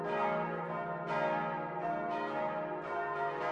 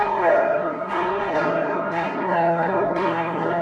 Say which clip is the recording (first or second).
first